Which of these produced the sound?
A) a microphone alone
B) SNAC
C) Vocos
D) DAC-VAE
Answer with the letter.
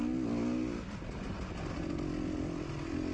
A